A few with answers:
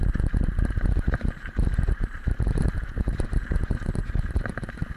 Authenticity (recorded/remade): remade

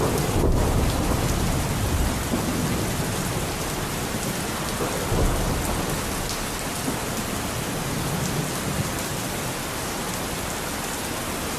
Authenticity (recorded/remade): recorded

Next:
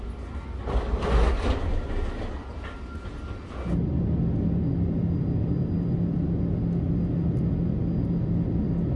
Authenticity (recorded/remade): recorded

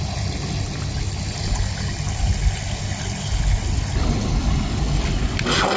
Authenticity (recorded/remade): recorded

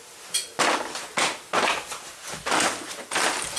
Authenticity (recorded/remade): recorded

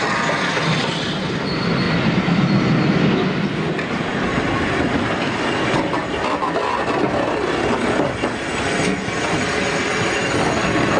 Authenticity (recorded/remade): recorded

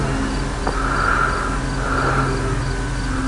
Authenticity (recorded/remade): recorded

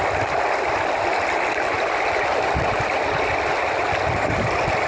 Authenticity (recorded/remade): recorded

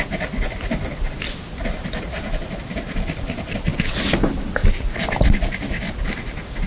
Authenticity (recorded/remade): recorded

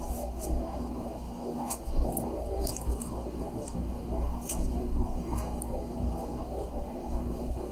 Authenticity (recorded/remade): remade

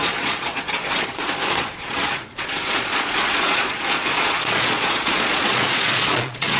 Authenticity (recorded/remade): remade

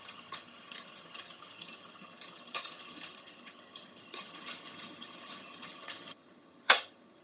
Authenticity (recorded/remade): remade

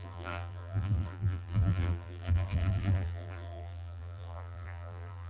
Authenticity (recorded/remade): remade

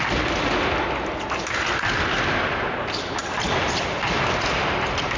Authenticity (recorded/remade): recorded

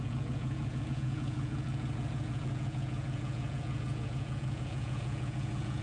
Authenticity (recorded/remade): remade